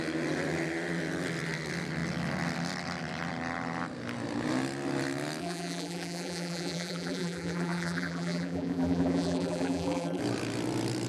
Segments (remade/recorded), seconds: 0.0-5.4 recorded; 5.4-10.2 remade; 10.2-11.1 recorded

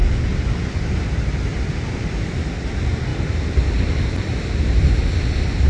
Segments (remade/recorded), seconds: 0.0-5.7 remade

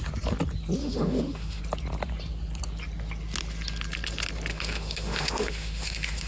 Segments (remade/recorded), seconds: 0.0-0.8 recorded; 0.8-1.6 remade; 1.6-4.5 recorded; 4.5-6.3 remade

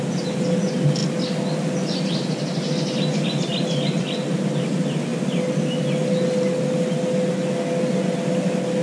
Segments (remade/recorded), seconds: 0.0-8.8 recorded

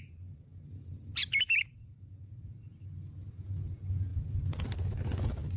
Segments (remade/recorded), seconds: 0.0-5.6 recorded